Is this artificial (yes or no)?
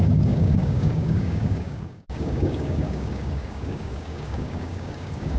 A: yes